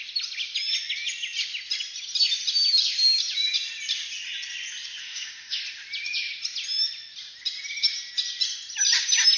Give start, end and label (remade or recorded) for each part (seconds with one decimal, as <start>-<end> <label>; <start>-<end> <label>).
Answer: 0.0-5.0 recorded; 5.0-5.6 remade; 5.6-9.4 recorded